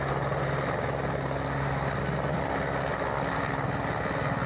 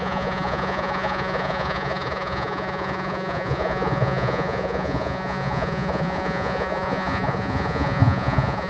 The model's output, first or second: second